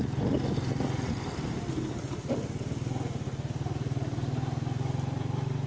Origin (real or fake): real